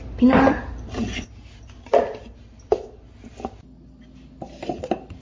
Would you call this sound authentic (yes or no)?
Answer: yes